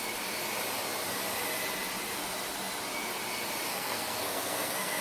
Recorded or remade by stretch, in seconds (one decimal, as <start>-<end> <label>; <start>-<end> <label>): 0.0-3.7 recorded; 3.7-5.0 remade